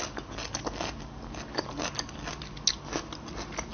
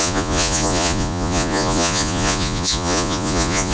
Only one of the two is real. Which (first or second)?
first